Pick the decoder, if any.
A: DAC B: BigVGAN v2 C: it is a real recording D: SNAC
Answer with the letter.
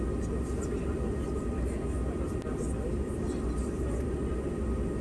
C